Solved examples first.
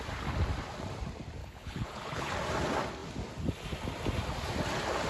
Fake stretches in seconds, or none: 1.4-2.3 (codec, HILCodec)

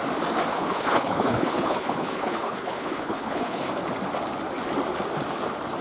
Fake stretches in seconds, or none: 0.5-3.7 (codec, HILCodec)

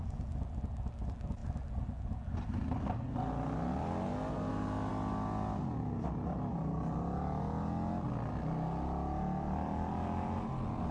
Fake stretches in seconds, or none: none

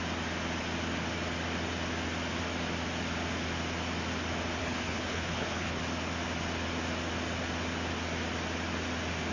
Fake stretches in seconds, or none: 4.6-5.8 (codec, HILCodec)

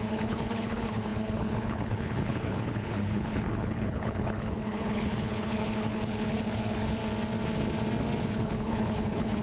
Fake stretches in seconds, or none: 0.0-7.0 (codec, HILCodec); 8.2-9.4

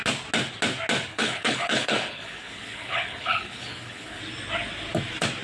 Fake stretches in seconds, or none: 1.1-4.2 (codec, HILCodec)

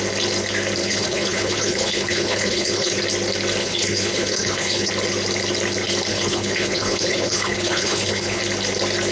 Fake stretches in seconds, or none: 0.8-3.0 (codec, HILCodec); 3.6-4.9; 6.1-8.4